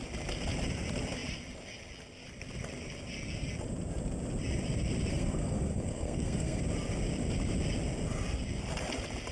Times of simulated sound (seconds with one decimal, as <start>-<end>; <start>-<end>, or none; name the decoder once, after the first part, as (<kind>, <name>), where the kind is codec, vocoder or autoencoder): 5.1-6.6 (codec, SNAC)